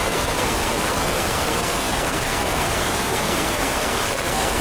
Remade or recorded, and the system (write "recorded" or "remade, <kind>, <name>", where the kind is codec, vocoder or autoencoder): remade, codec, SNAC